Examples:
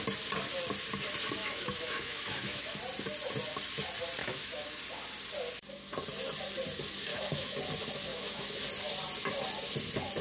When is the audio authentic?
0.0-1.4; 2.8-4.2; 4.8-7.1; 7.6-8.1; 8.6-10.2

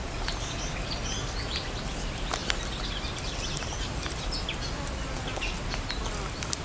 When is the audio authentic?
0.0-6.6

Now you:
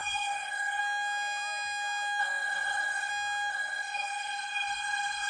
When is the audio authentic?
0.8-2.2; 3.1-3.5

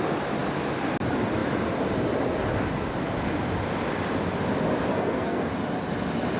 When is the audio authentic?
0.0-4.9; 5.5-6.4

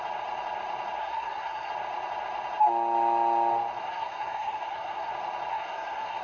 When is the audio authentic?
0.0-1.0; 1.7-3.8; 5.1-5.5